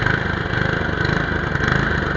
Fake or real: real